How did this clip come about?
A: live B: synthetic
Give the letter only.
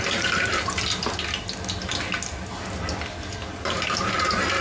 A